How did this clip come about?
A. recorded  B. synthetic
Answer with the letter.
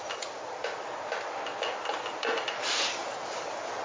A